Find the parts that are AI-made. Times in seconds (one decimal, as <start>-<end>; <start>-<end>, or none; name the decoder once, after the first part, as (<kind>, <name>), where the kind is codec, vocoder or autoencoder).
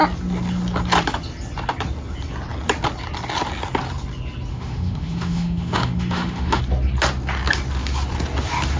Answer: 4.5-6.6 (autoencoder, DAC-VAE)